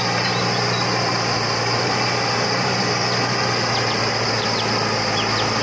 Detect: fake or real real